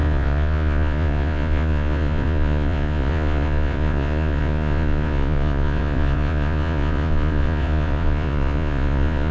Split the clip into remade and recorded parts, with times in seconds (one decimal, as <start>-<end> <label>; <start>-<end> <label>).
0.0-9.3 remade

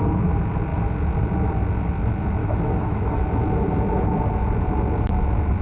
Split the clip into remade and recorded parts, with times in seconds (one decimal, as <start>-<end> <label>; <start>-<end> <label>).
0.0-2.4 recorded; 2.4-3.2 remade; 3.2-5.6 recorded

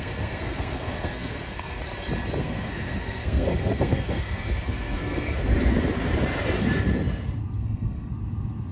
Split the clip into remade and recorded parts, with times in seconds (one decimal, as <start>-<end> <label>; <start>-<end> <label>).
0.0-1.8 remade; 1.8-2.4 recorded; 2.4-5.5 remade; 5.5-7.6 recorded; 7.6-8.1 remade; 8.1-8.7 recorded

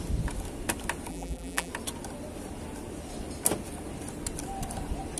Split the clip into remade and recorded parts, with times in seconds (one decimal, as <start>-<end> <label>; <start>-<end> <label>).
0.0-1.1 recorded; 1.1-1.7 remade; 1.7-5.2 recorded

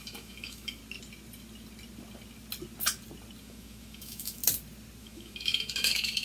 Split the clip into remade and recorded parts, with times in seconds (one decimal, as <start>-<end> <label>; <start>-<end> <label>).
0.0-0.8 remade; 0.8-3.4 recorded; 3.4-4.4 remade; 4.4-5.0 recorded; 5.0-6.2 remade